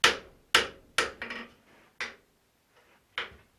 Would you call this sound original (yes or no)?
yes